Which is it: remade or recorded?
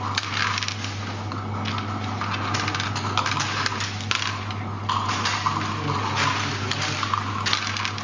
recorded